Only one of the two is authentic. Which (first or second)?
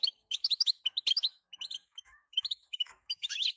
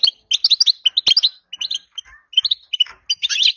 second